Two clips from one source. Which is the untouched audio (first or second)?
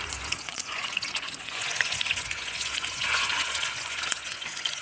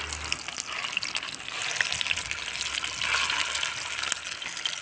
second